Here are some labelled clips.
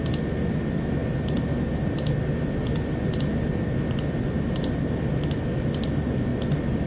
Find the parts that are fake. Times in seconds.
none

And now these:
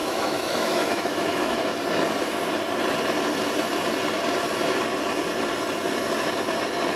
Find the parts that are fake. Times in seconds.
0.0-1.6 (autoencoder, DAC-VAE)

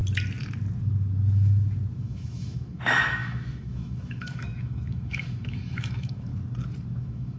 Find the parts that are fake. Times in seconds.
2.0-6.3 (autoencoder, DAC-VAE); 7.0-7.4

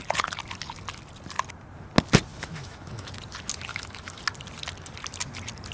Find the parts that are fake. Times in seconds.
2.3-3.1 (autoencoder, DAC-VAE); 3.7-4.2